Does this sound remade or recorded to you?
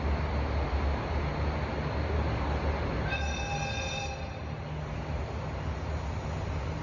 recorded